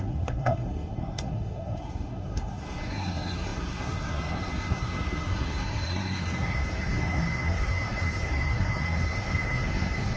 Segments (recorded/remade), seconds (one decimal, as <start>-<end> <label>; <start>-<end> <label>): 0.0-10.2 remade